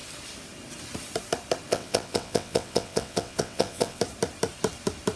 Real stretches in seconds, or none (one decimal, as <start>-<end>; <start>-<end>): 0.0-1.7; 4.0-5.2